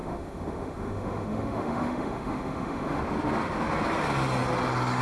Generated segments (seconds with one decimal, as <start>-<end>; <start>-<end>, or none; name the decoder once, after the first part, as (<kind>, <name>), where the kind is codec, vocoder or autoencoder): 0.0-3.0 (autoencoder, DAC-VAE)